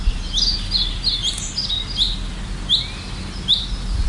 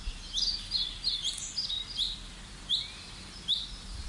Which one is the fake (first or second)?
second